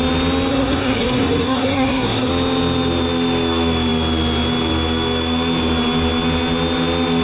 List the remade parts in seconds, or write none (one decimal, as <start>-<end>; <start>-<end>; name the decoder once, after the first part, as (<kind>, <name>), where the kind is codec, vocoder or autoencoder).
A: 0.5-2.3 (codec, SNAC)